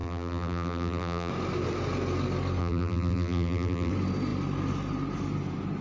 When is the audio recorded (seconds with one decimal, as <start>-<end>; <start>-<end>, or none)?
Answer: 1.3-2.6; 3.9-5.8

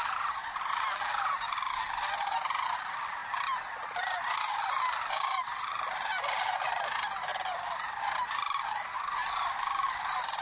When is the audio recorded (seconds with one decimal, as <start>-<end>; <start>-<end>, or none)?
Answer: 3.2-5.4; 7.3-8.7

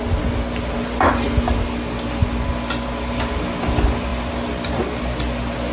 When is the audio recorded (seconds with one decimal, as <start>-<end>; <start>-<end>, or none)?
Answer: 0.0-5.7

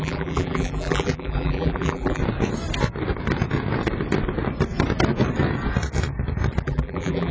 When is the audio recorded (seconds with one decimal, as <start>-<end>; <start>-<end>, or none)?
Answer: 2.2-6.6

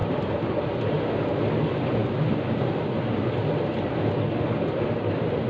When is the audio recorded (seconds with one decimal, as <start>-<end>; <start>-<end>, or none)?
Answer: 0.5-5.5